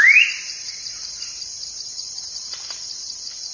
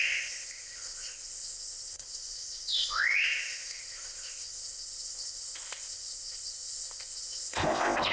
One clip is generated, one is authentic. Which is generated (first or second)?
second